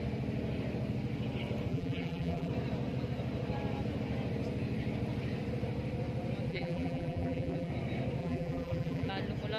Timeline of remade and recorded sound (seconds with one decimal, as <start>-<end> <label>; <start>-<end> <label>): 0.0-1.7 recorded; 1.7-2.5 remade; 2.5-6.5 recorded; 6.5-7.7 remade; 7.7-8.2 recorded; 8.2-9.1 remade; 9.1-9.6 recorded